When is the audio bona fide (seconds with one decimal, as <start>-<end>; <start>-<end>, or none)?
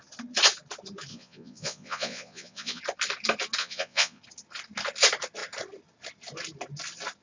0.0-1.1; 2.8-3.6; 4.2-7.2